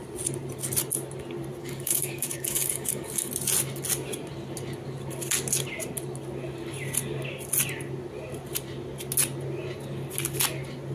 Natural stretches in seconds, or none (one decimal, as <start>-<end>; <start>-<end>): 0.0-1.6; 3.3-10.9